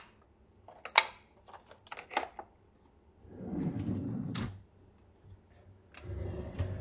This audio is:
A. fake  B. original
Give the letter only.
B